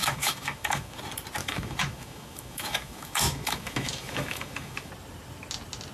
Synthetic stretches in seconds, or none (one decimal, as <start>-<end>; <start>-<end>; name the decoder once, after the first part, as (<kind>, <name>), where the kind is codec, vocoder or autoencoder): 0.0-1.0 (autoencoder, DAC-VAE); 1.4-4.9